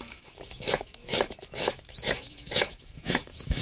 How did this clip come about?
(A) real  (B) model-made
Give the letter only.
B